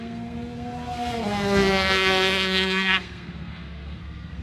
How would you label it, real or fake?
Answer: fake